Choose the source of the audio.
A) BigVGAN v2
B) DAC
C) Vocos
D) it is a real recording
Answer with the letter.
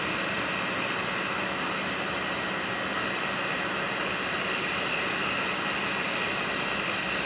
D